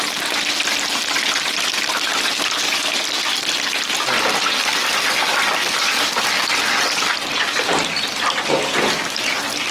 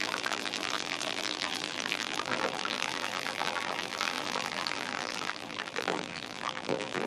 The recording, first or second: first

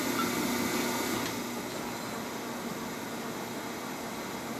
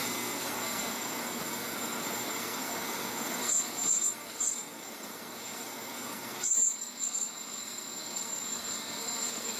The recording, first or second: first